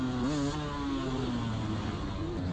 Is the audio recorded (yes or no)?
yes